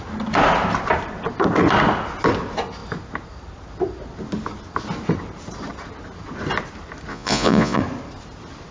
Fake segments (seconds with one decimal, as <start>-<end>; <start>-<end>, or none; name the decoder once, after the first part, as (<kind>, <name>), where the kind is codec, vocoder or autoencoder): 7.1-7.8 (vocoder, Vocos)